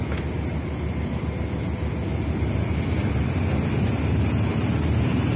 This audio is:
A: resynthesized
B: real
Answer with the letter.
B